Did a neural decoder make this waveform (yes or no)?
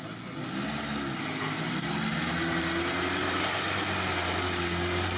no